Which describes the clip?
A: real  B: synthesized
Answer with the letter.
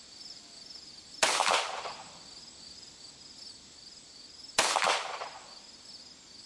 A